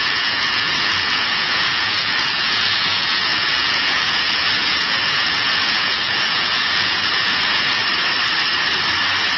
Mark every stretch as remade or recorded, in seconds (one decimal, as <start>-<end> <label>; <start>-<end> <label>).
0.0-7.8 remade; 7.8-9.4 recorded

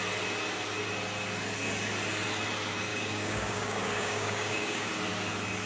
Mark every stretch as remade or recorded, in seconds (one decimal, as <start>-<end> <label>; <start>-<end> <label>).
0.0-2.9 recorded; 2.9-4.9 remade; 4.9-5.7 recorded

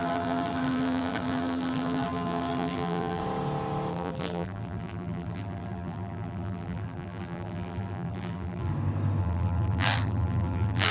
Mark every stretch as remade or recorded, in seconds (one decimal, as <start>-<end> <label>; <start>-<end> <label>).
0.0-3.2 remade; 3.2-3.9 recorded; 3.9-8.7 remade; 8.7-9.2 recorded; 9.2-10.9 remade

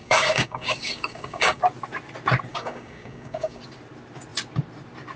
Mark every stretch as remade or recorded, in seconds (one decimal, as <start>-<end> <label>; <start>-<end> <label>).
0.0-1.6 remade; 1.6-2.5 recorded; 2.5-3.6 remade; 3.6-5.2 recorded